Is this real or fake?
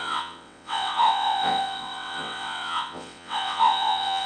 fake